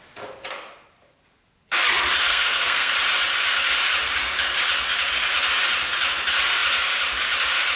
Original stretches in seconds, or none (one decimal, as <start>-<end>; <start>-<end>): 0.0-2.3; 2.9-7.8